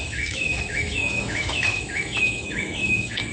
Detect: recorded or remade remade